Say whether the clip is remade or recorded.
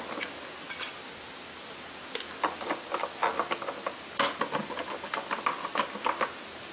recorded